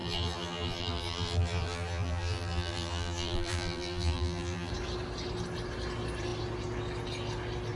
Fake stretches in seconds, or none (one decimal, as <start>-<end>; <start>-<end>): 0.0-4.7